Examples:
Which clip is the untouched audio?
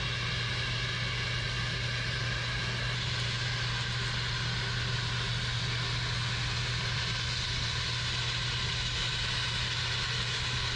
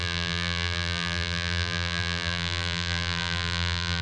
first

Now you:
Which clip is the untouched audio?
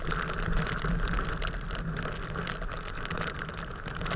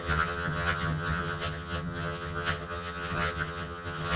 first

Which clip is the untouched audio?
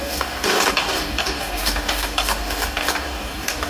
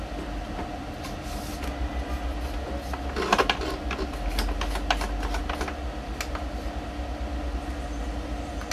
second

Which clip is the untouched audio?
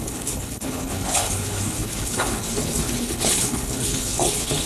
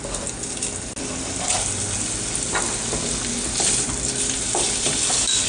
second